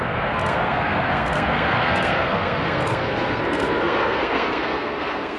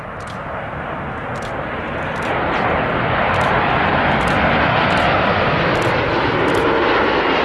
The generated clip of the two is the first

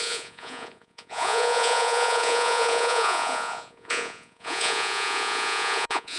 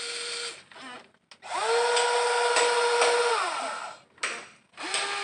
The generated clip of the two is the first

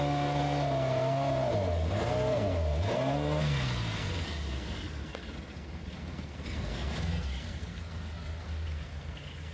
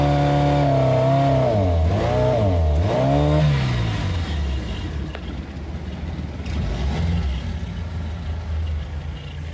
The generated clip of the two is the first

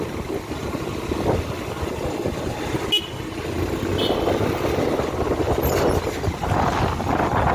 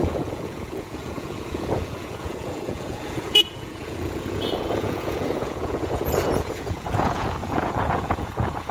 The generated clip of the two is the second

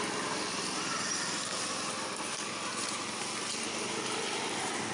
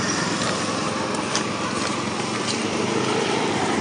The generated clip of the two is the second